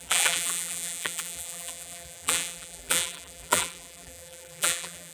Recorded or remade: remade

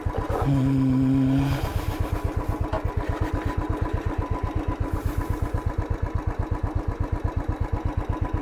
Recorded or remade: recorded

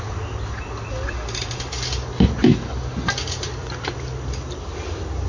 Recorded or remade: recorded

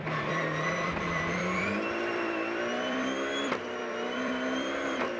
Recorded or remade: remade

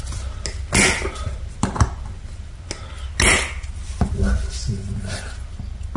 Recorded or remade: recorded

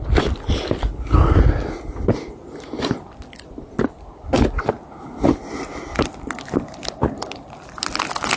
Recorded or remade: recorded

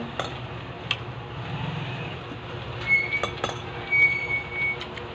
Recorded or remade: recorded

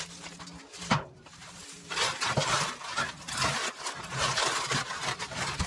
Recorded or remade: remade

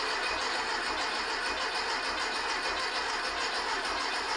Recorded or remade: recorded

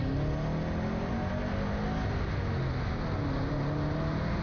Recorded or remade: recorded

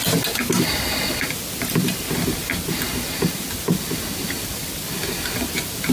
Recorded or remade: recorded